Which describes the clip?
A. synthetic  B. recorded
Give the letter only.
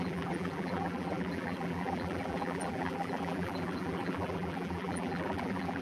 A